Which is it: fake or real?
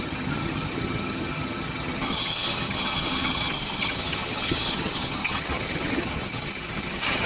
fake